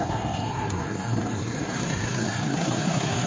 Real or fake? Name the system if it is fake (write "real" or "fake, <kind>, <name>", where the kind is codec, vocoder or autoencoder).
fake, codec, SNAC